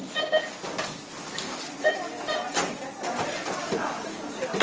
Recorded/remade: recorded